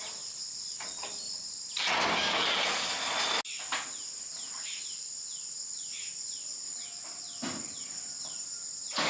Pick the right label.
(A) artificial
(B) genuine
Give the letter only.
B